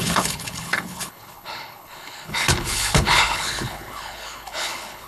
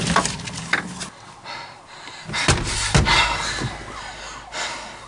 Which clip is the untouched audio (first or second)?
second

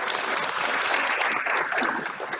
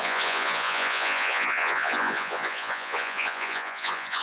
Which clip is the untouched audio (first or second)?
first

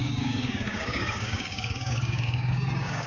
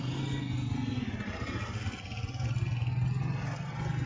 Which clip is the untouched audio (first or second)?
second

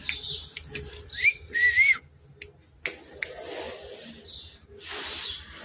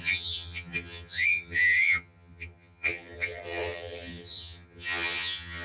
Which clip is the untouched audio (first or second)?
first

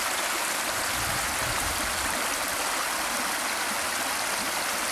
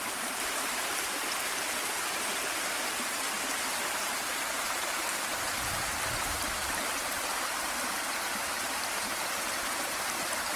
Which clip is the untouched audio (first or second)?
first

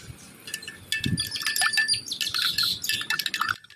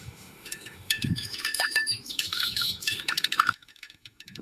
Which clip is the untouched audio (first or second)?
first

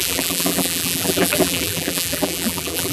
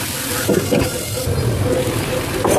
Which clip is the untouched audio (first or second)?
second